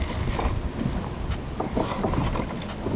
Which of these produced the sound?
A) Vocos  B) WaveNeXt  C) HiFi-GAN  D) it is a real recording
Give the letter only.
D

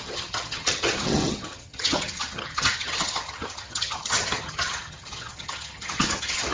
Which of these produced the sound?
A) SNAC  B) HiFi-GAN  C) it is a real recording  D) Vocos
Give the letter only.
B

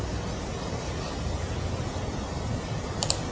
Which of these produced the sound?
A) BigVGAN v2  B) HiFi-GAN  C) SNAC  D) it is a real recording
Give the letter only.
D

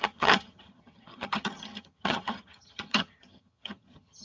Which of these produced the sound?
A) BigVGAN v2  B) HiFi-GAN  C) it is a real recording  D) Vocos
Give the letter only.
B